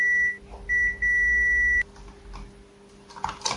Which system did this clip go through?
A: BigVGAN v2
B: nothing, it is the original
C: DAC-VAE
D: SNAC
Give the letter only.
B